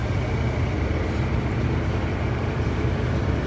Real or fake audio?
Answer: fake